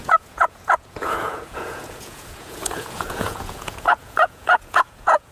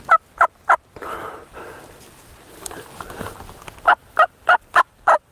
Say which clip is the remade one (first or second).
first